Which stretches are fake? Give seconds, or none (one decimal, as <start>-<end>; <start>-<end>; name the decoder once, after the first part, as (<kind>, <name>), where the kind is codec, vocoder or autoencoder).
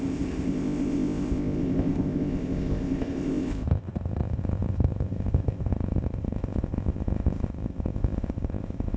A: 0.0-9.0 (codec, ZipCodec)